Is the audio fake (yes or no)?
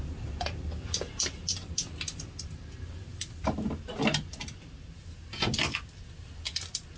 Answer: no